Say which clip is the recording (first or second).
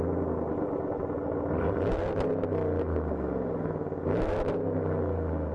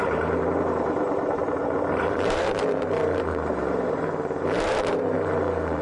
first